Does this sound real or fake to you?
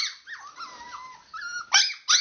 real